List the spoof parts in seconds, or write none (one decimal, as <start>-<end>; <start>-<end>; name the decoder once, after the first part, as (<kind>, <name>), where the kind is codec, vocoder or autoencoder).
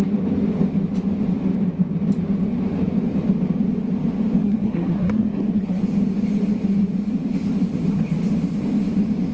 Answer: 4.4-5.8 (codec, SNAC)